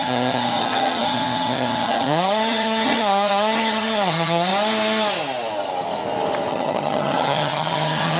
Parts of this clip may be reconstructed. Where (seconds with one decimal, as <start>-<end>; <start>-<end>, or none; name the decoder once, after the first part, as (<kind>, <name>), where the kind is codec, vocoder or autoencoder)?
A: 0.0-4.5 (vocoder, HiFi-GAN); 6.5-8.2